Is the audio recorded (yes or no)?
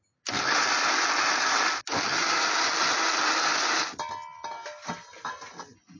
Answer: yes